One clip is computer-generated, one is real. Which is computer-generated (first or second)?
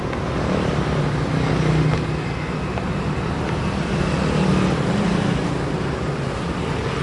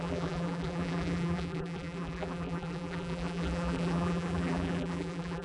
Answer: second